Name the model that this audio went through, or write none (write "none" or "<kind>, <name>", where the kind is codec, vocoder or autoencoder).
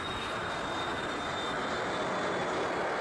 none